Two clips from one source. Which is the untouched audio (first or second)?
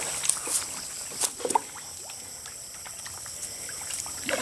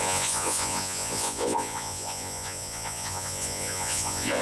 first